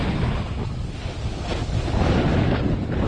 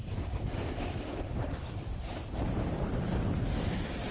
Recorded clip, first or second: first